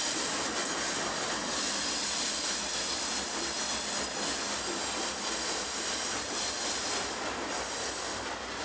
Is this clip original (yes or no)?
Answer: yes